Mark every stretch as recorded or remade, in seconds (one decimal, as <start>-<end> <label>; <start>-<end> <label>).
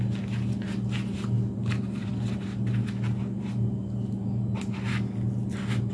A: 0.0-5.9 recorded